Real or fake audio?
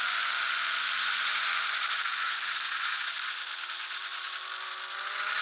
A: fake